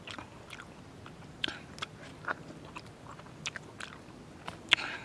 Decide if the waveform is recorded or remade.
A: recorded